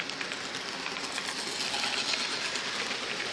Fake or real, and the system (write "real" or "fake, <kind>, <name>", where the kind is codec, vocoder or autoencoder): real